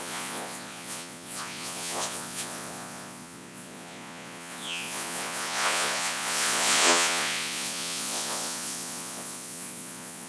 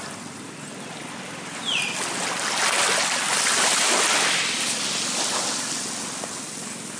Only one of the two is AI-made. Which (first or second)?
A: first